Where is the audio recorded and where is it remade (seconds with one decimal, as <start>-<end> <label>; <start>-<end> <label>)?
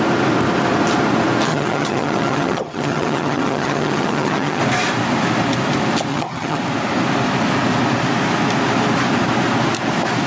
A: 0.0-1.5 recorded; 1.5-4.6 remade; 4.6-6.1 recorded; 6.1-6.6 remade; 6.6-10.3 recorded